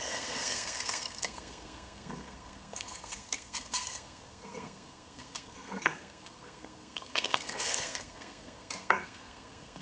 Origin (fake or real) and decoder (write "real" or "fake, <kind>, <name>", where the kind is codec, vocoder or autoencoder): fake, codec, SNAC